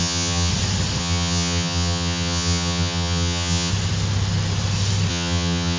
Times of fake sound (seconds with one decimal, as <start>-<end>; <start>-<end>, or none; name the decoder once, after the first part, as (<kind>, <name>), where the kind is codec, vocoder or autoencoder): 0.0-0.5 (vocoder, HiFi-GAN); 1.0-3.7; 5.1-5.8